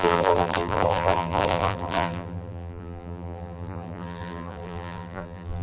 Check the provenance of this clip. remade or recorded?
remade